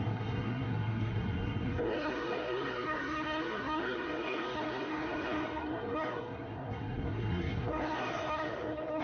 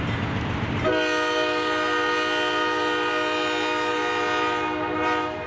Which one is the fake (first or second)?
first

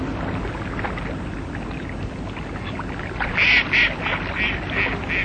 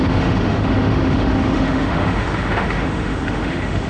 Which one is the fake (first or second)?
second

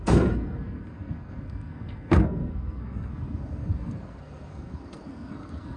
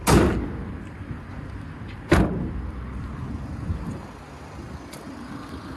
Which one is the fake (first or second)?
first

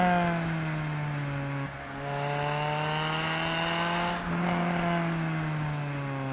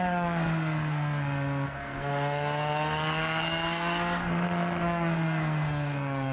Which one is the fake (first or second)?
second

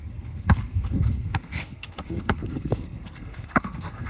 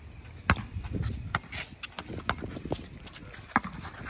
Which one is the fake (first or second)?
first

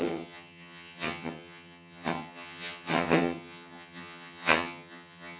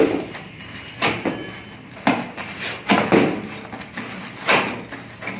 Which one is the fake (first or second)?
first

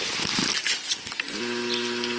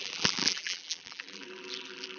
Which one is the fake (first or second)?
second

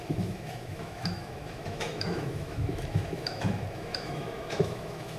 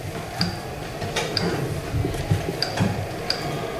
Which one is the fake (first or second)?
first